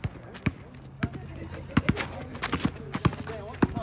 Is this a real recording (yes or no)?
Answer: yes